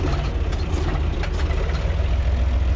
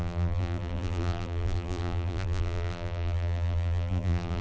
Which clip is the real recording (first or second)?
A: first